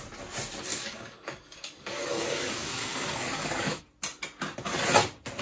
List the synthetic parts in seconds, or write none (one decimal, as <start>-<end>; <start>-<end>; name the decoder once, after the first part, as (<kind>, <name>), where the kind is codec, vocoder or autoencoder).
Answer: 0.7-3.8 (codec, DAC)